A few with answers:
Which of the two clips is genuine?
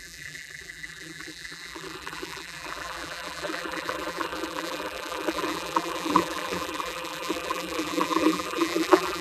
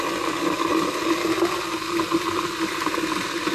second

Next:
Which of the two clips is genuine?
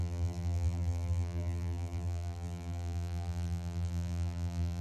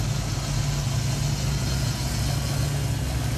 second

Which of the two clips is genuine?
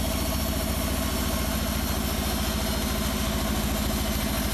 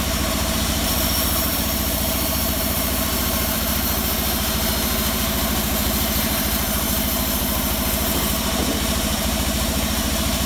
first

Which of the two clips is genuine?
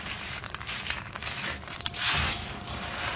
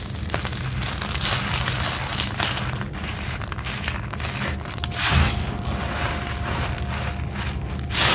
second